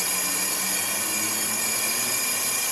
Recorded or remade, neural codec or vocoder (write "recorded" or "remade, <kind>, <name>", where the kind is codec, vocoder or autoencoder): recorded